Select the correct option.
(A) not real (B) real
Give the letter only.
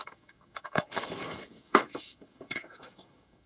A